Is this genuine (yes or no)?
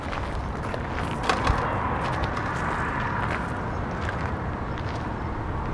yes